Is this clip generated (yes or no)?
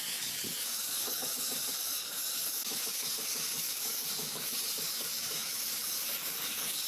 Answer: yes